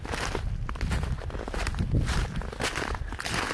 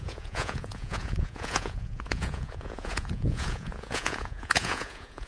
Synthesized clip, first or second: second